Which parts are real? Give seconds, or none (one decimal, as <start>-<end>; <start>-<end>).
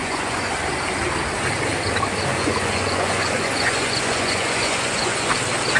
0.5-2.3; 5.3-5.8